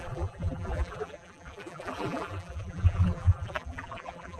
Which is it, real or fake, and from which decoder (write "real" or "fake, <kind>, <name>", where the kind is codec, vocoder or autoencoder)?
fake, vocoder, BigVGAN v2